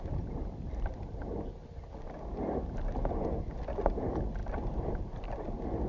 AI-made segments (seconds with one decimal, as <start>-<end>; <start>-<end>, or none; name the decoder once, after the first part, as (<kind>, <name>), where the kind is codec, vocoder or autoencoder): none